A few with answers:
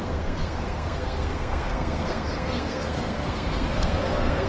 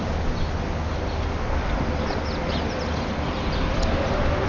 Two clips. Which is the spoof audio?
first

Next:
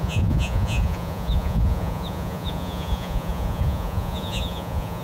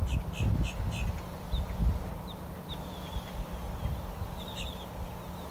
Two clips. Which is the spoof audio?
first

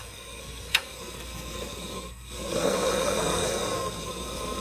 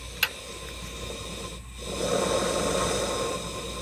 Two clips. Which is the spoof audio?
first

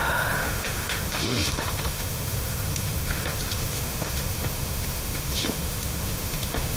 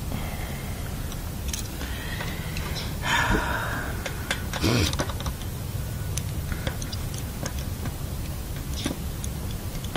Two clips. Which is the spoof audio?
first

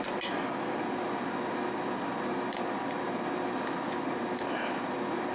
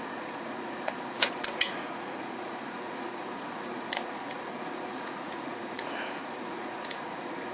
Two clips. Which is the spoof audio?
second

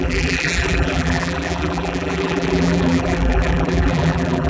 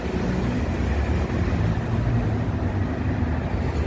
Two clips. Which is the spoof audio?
first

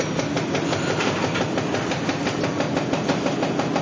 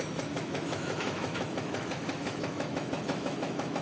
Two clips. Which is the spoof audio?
second